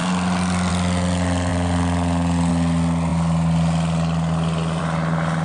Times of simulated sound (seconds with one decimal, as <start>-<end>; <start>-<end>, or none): none